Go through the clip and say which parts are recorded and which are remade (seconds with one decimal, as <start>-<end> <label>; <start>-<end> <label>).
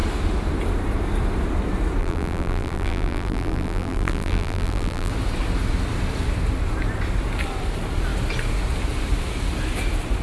0.0-2.0 recorded; 2.0-5.1 remade; 5.1-10.2 recorded